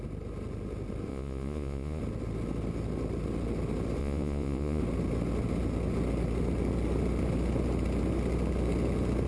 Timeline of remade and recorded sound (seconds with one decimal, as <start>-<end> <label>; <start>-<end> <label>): 0.0-1.1 recorded; 1.1-2.0 remade; 2.0-4.0 recorded; 4.0-4.8 remade; 4.8-9.3 recorded